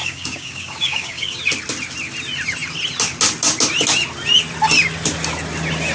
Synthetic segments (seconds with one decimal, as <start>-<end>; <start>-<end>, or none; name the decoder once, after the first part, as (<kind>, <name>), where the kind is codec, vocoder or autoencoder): 0.0-1.4 (codec, DAC)